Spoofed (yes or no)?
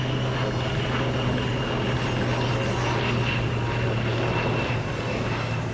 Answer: no